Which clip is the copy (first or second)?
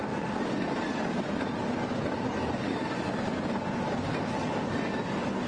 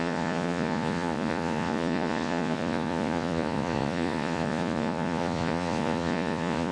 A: second